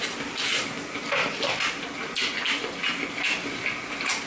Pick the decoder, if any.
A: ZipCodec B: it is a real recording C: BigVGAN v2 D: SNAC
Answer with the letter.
B